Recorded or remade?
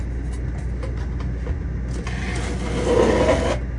recorded